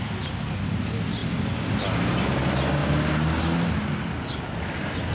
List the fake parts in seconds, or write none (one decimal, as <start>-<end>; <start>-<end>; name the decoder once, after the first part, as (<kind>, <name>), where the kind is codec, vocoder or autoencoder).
none